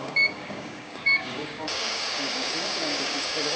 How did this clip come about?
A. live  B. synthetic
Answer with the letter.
B